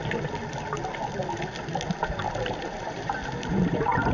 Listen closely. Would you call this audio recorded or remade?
recorded